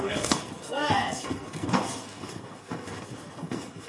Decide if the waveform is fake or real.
fake